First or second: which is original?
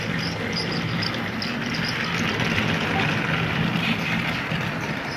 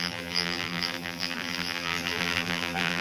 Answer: first